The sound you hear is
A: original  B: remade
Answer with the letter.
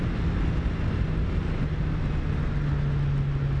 A